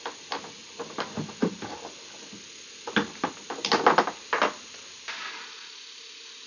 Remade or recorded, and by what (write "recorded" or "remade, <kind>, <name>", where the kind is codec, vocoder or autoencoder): recorded